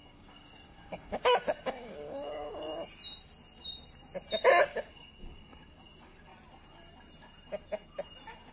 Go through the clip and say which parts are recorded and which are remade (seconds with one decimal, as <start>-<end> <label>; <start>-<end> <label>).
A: 0.0-2.7 remade; 2.7-4.6 recorded; 4.6-6.3 remade; 6.3-8.5 recorded